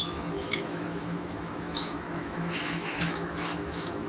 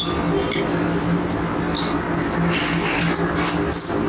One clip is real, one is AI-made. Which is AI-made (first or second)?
first